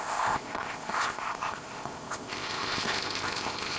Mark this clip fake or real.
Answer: fake